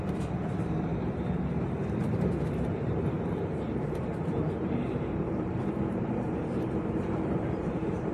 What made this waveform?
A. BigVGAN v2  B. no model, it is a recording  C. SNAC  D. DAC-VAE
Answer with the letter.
A